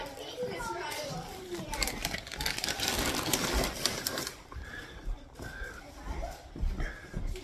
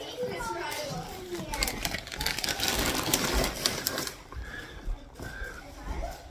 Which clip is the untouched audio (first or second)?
second